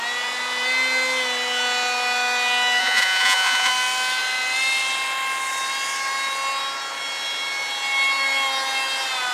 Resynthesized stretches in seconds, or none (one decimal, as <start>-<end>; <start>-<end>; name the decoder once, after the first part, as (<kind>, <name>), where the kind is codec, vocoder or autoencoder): 2.8-3.7 (vocoder, Vocos)